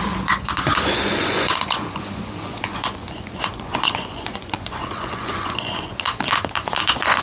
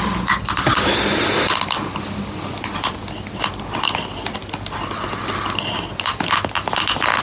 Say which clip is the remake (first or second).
first